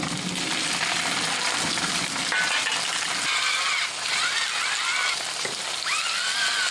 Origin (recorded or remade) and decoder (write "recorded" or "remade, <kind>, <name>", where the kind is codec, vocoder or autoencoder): recorded